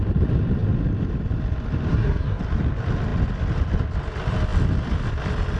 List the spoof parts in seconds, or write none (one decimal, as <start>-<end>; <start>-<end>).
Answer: 1.9-2.4